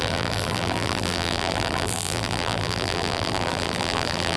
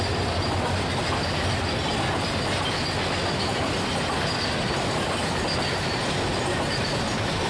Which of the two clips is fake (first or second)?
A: first